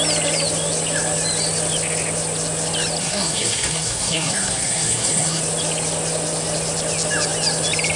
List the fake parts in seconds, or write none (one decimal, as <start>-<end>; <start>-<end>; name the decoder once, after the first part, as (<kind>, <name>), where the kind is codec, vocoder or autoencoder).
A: 3.0-5.4 (codec, SNAC)